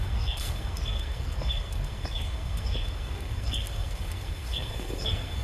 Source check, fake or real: fake